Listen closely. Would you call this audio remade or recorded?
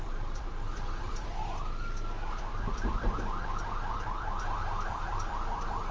remade